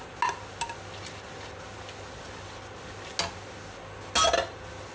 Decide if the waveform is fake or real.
real